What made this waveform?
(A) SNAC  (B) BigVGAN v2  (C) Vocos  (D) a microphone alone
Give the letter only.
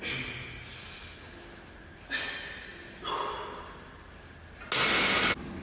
D